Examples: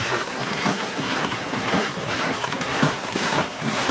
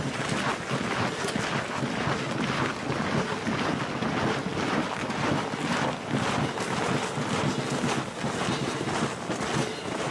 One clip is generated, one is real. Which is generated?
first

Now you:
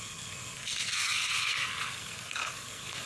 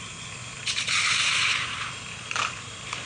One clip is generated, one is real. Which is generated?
first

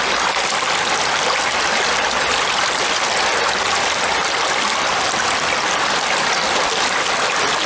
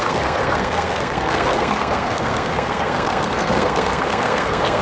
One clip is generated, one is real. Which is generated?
second